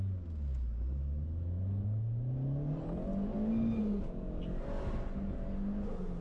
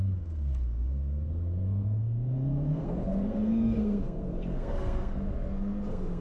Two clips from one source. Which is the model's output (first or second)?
second